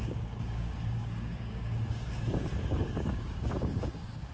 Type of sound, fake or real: fake